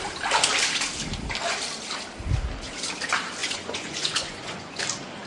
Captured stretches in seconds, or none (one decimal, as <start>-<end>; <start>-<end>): 0.0-3.4; 4.8-5.3